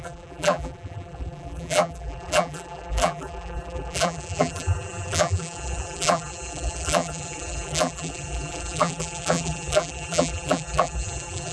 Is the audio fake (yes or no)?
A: yes